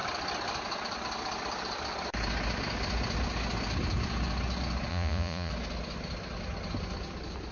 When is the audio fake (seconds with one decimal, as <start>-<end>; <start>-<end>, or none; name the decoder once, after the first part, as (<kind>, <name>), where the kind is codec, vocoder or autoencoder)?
4.9-5.5 (vocoder, Vocos)